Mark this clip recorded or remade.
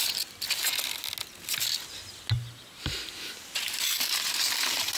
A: recorded